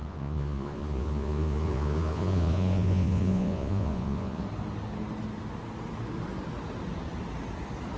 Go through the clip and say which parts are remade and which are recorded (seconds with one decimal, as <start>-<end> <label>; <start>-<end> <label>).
0.0-4.4 remade; 4.4-8.0 recorded

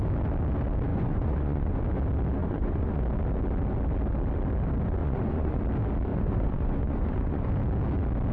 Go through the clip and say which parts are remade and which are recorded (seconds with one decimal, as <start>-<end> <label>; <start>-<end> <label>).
0.0-0.9 recorded; 0.9-1.8 remade; 1.8-2.4 recorded; 2.4-3.0 remade; 3.0-5.0 recorded; 5.0-5.6 remade; 5.6-6.1 recorded; 6.1-7.5 remade; 7.5-8.3 recorded

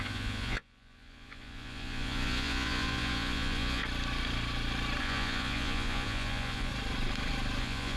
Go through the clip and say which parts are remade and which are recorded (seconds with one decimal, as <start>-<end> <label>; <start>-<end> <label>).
0.0-3.8 remade; 3.8-5.0 recorded; 5.0-6.7 remade; 6.7-7.6 recorded; 7.6-8.0 remade

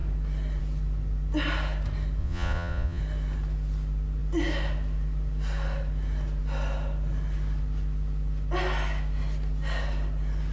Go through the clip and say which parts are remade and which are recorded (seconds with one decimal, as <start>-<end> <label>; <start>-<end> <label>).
0.0-2.2 recorded; 2.2-3.0 remade; 3.0-10.5 recorded

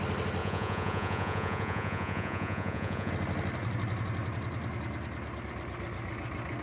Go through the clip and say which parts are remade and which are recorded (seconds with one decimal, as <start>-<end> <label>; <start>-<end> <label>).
0.0-0.4 recorded; 0.4-3.1 remade; 3.1-6.6 recorded

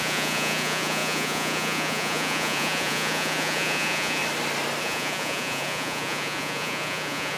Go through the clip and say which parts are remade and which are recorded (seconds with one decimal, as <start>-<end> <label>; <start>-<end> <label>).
0.0-4.2 remade; 4.2-4.8 recorded; 4.8-7.4 remade

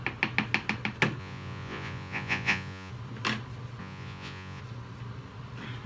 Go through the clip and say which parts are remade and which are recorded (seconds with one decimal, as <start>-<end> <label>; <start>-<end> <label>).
0.0-1.2 recorded; 1.2-2.9 remade; 2.9-3.8 recorded; 3.8-4.6 remade; 4.6-5.9 recorded